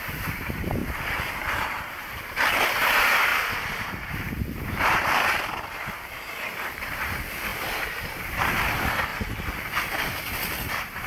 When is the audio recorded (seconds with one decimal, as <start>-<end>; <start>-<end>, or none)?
9.1-10.7

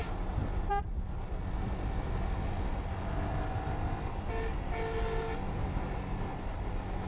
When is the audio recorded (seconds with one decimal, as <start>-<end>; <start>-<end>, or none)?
0.0-0.4; 2.2-7.1

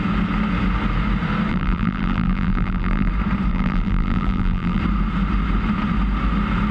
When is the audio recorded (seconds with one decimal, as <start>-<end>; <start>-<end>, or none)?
0.0-1.5; 3.1-3.5; 4.8-6.7

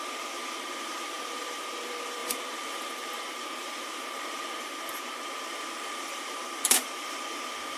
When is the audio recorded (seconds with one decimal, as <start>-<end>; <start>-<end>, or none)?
none

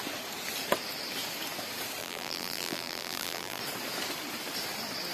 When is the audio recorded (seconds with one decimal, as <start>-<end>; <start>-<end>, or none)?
0.0-2.0; 3.6-5.1

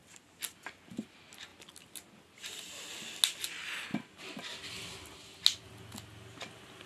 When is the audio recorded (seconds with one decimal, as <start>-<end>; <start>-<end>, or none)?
0.9-6.9